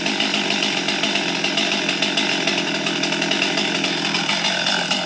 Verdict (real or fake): real